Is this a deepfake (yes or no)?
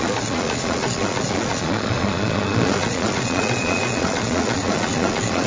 yes